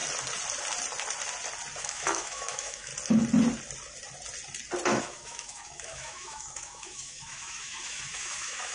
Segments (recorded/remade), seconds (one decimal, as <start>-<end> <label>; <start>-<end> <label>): 0.0-1.8 recorded; 1.8-2.9 remade; 2.9-5.0 recorded; 5.0-8.7 remade